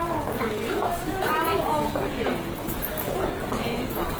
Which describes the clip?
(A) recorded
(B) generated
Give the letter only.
B